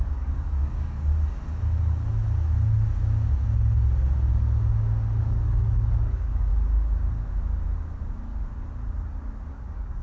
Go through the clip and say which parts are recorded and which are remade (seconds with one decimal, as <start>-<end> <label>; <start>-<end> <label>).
0.0-1.1 remade; 1.1-5.2 recorded; 5.2-6.5 remade; 6.5-9.5 recorded; 9.5-10.0 remade